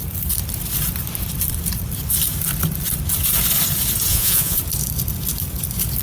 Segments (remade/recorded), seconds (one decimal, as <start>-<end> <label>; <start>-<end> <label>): 0.0-4.1 recorded; 4.1-4.6 remade; 4.6-6.0 recorded